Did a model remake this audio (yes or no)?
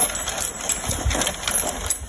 no